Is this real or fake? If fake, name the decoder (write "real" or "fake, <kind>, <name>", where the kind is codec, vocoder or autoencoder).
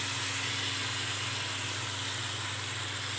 real